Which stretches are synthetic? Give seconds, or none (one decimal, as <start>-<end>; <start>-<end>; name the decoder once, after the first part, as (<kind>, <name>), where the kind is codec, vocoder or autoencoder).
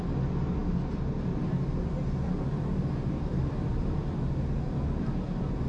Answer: 3.3-4.2 (vocoder, BigVGAN v2)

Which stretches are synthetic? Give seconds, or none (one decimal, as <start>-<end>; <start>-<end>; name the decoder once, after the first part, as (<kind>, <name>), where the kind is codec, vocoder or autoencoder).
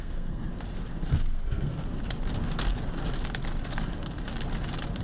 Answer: 0.0-0.5 (codec, SNAC); 1.1-1.7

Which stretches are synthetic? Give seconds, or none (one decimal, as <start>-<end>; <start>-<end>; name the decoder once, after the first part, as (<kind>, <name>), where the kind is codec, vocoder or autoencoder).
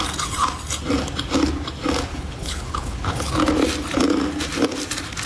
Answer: 2.1-3.3 (codec, HILCodec)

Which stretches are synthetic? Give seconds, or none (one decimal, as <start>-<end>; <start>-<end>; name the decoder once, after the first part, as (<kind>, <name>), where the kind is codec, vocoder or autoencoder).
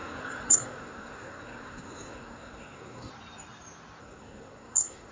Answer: 0.0-3.1 (codec, SNAC); 4.0-5.1